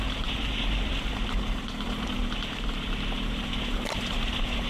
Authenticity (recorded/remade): remade